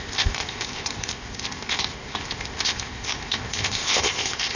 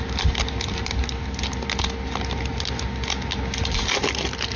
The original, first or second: second